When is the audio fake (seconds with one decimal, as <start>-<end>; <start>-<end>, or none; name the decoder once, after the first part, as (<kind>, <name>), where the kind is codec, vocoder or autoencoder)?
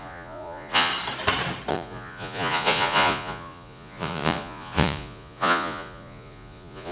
0.0-0.9 (vocoder, Vocos); 1.7-6.9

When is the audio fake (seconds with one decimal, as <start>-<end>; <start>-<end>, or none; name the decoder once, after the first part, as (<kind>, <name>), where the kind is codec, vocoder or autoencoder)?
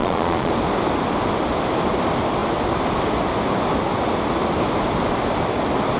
0.0-0.5 (vocoder, Vocos)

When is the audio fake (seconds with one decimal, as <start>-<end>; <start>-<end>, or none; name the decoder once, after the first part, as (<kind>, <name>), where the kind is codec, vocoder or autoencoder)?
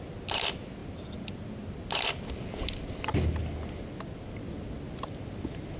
none